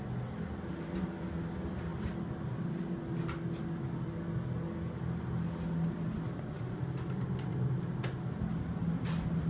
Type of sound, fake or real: real